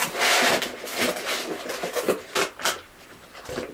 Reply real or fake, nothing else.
real